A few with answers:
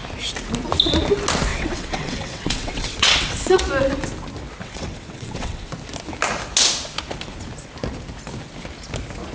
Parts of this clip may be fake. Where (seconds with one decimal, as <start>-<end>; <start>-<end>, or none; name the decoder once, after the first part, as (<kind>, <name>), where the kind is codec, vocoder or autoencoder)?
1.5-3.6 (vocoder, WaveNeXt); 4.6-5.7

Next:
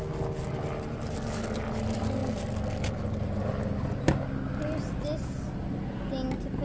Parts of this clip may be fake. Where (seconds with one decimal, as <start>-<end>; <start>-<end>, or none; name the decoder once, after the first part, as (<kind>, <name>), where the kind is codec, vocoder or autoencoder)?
none

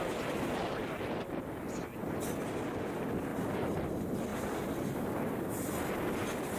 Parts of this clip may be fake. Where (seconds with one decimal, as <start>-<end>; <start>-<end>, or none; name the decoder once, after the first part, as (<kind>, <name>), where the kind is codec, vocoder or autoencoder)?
3.3-3.9 (vocoder, BigVGAN v2)